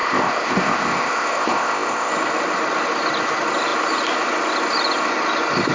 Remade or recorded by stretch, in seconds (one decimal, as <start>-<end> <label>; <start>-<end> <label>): 0.0-2.1 remade; 2.1-5.7 recorded